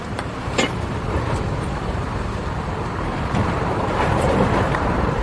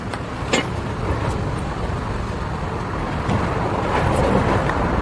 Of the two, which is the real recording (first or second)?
second